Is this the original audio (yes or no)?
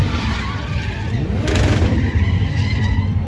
no